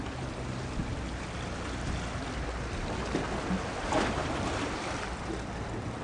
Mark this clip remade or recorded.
recorded